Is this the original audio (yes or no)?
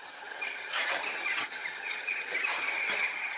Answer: no